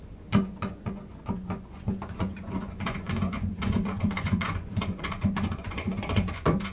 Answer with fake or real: fake